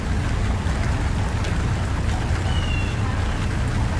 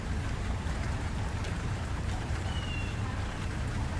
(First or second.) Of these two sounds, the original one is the first